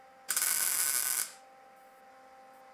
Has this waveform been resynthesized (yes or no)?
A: no